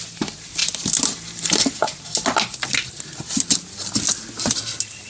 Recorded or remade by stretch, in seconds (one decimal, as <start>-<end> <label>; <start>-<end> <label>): 0.0-5.1 recorded